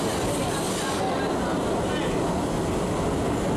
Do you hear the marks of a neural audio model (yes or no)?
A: no